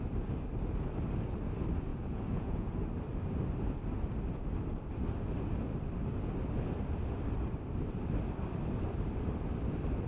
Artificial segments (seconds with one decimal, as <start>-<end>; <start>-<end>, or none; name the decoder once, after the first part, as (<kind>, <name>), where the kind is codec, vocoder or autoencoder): 1.9-2.7 (vocoder, Vocos)